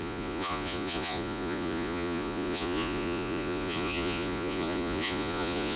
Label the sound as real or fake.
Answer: fake